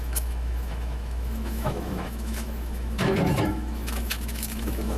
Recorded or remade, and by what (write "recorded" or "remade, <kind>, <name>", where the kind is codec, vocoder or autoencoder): remade, autoencoder, DAC-VAE